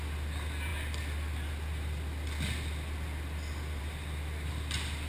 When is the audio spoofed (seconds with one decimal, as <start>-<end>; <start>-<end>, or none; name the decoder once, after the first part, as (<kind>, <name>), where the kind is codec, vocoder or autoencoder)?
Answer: none